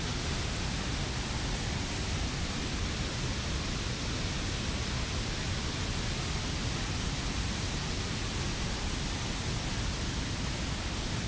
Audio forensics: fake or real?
real